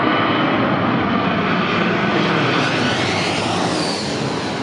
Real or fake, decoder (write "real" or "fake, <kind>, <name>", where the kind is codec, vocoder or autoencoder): real